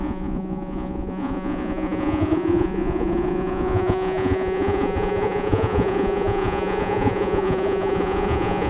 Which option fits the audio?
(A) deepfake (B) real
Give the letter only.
A